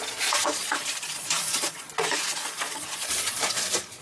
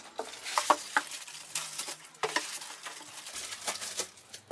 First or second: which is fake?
first